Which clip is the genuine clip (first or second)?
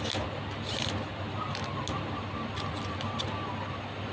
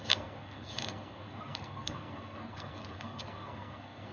first